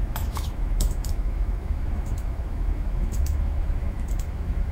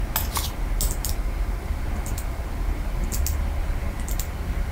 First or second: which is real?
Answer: second